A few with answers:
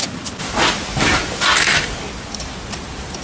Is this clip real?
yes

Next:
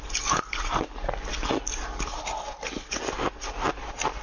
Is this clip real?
yes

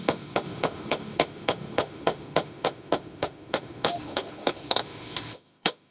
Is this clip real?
no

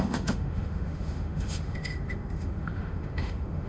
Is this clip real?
no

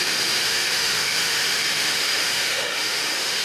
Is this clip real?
no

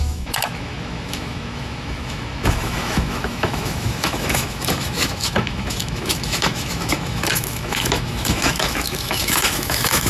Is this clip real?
no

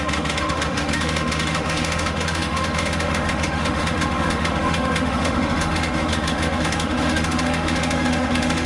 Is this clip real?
no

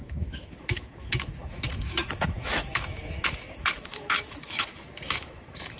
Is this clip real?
no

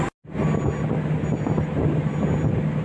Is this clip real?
yes